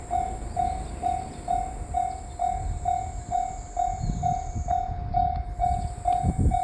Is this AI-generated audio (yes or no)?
no